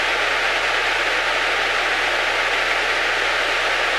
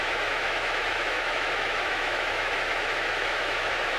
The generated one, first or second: second